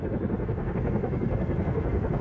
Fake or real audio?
fake